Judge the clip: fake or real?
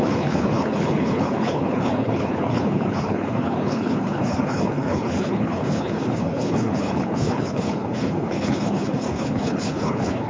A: fake